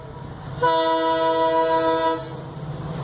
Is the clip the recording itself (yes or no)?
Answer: yes